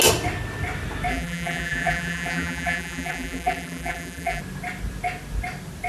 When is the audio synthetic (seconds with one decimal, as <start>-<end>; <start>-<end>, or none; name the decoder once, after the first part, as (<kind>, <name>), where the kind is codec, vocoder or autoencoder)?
1.1-4.4 (vocoder, BigVGAN v2)